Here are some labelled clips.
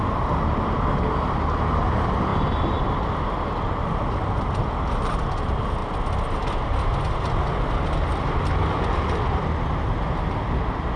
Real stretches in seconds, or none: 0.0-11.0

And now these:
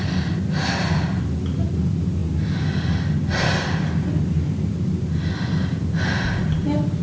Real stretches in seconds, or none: 0.0-7.0